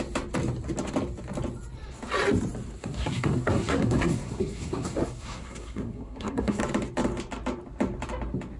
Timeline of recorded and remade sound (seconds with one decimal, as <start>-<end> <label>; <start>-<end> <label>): 0.0-2.8 recorded; 2.8-6.6 remade; 6.6-8.6 recorded

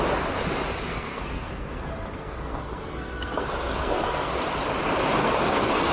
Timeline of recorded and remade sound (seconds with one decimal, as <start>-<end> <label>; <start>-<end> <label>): 0.0-0.9 recorded; 0.9-4.4 remade; 4.4-5.2 recorded; 5.2-5.9 remade

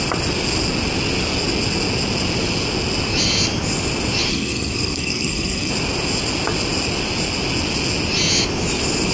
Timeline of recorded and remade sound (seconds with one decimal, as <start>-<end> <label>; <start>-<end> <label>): 0.0-4.3 recorded; 4.3-5.7 remade; 5.7-9.1 recorded

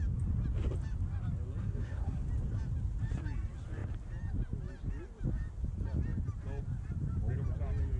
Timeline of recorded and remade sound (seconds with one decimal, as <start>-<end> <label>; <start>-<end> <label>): 0.0-1.6 recorded; 1.6-2.2 remade; 2.2-8.0 recorded